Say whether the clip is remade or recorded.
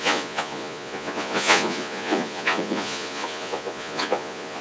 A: remade